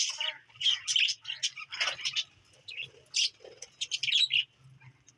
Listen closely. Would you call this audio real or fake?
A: real